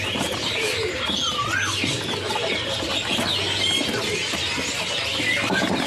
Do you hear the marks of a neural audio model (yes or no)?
no